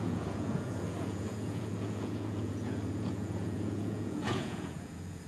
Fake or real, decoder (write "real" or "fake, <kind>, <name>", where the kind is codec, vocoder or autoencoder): fake, vocoder, Vocos